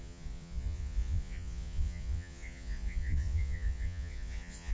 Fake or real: fake